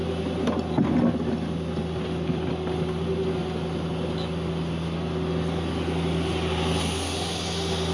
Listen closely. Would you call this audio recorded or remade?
recorded